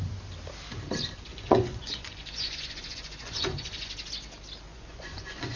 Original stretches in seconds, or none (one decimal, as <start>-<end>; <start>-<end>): 0.0-1.3; 3.9-4.7